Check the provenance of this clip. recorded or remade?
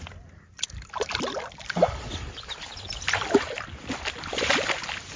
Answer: recorded